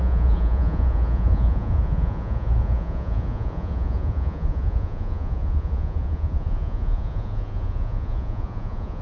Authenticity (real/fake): fake